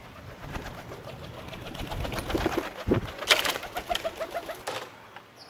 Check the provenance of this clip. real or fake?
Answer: real